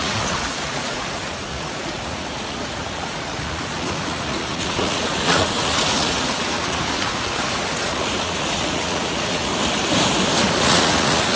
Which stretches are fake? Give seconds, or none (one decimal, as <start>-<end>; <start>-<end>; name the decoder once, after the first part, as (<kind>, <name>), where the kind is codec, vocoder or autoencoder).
0.0-9.5 (vocoder, Vocos); 10.6-11.4